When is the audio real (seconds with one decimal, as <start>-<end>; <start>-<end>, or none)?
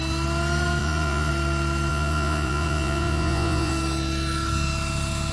0.0-0.8; 1.3-1.9; 3.7-5.3